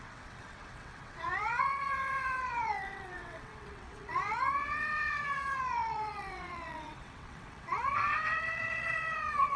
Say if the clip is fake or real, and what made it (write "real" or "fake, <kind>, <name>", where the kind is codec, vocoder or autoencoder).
fake, vocoder, WaveNeXt